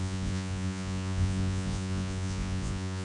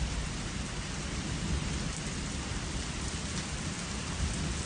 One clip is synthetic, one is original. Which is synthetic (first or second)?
first